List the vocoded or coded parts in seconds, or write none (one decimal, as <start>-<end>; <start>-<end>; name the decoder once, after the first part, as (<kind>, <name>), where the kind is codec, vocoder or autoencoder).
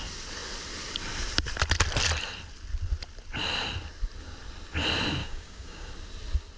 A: 5.2-5.9 (codec, DAC)